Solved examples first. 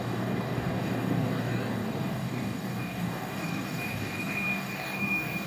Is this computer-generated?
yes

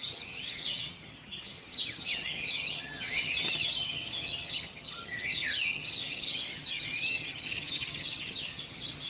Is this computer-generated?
yes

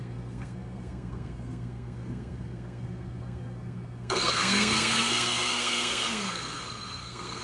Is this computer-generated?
yes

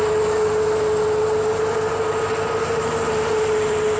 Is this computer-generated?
no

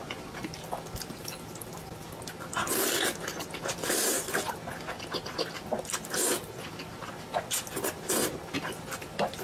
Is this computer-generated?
no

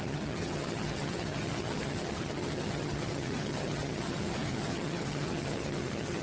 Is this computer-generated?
yes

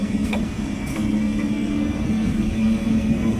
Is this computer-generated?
yes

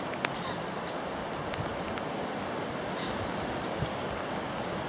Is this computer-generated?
no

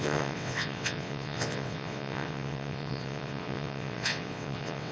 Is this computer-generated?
yes